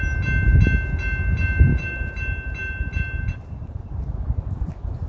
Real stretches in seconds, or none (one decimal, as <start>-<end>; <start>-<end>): 0.0-5.1